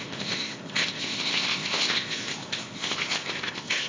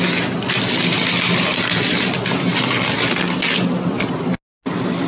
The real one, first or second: second